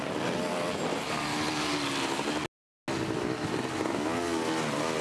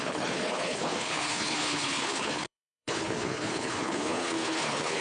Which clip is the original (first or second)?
first